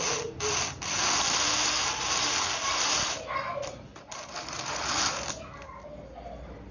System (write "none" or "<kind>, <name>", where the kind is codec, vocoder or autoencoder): none